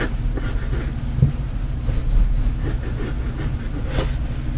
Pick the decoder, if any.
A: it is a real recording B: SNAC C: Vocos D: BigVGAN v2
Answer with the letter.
A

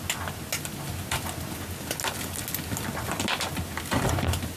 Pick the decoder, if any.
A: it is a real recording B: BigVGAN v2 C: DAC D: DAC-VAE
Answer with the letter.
A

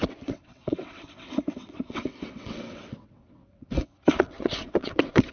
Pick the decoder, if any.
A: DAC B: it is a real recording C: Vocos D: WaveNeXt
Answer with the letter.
D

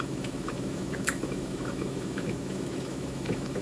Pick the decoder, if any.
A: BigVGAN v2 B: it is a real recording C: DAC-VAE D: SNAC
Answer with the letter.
C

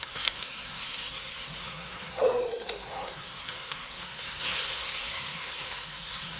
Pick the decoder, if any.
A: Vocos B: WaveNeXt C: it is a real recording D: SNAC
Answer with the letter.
D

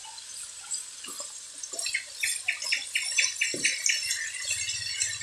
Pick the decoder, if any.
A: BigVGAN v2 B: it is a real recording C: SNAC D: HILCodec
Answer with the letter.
B